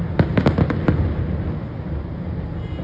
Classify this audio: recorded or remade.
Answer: recorded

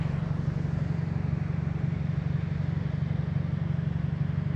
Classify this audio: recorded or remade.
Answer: recorded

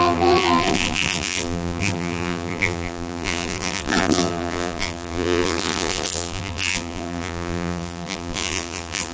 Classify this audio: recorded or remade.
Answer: remade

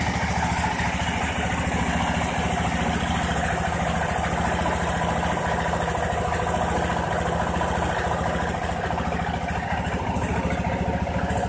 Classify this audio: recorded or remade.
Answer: recorded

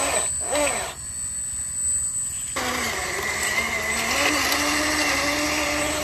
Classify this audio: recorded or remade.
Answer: recorded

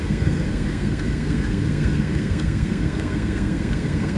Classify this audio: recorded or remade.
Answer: remade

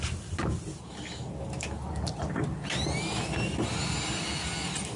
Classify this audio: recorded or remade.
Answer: recorded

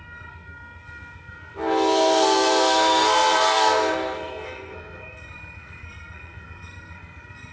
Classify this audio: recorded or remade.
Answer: remade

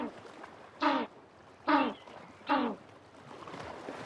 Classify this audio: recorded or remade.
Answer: recorded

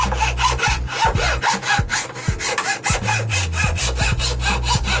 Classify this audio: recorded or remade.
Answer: recorded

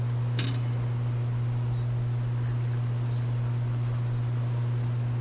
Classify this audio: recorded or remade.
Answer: recorded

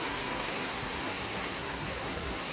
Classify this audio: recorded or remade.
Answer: remade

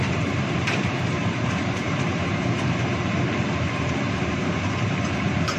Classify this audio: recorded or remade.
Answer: remade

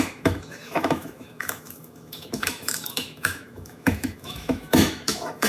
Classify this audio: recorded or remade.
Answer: remade